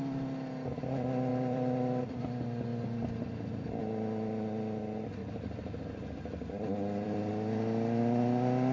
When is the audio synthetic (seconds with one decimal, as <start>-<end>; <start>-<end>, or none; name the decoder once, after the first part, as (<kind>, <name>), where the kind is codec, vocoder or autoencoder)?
1.3-2.1 (vocoder, BigVGAN v2); 2.7-3.8; 5.2-7.3